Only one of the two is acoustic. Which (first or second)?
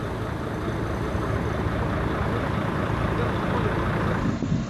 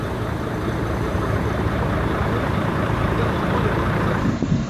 first